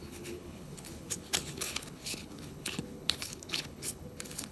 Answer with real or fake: fake